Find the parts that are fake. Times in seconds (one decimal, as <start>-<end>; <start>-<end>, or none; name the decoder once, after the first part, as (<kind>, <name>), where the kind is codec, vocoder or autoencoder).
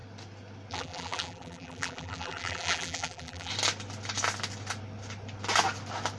0.7-3.5 (vocoder, BigVGAN v2)